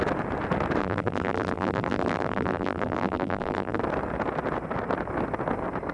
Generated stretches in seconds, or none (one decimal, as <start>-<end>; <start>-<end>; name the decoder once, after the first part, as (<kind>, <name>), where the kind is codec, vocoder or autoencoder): 0.8-3.8 (vocoder, BigVGAN v2)